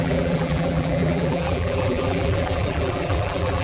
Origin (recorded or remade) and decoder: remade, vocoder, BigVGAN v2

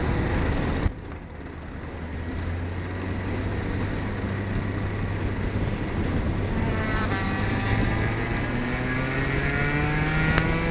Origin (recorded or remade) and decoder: recorded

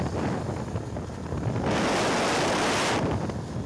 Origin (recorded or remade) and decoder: recorded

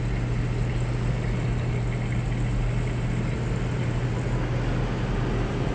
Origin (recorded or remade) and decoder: recorded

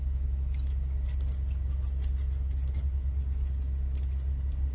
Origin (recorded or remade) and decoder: recorded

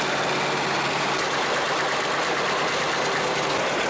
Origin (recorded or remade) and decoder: recorded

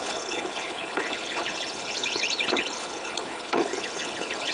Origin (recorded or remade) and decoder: remade, codec, HILCodec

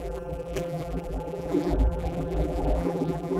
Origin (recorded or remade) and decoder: remade, vocoder, BigVGAN v2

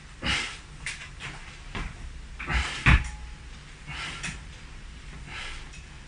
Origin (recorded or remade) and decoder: recorded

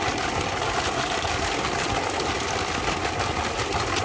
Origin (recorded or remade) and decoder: recorded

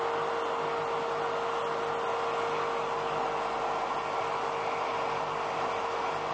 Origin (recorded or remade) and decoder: recorded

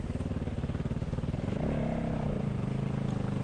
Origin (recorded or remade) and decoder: recorded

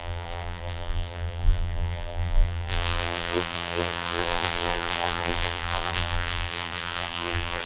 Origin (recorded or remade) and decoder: remade, vocoder, BigVGAN v2